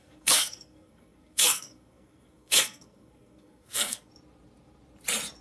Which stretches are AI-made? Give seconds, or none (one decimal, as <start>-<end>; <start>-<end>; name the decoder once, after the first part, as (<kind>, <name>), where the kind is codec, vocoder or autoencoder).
0.0-4.1 (codec, SNAC)